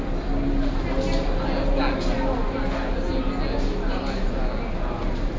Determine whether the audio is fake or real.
real